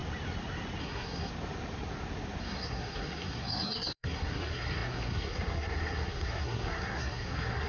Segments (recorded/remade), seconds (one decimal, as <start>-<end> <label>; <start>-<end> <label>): 0.0-0.8 recorded; 0.8-1.3 remade; 1.3-2.4 recorded; 2.4-7.7 remade